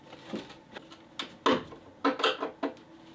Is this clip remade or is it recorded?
recorded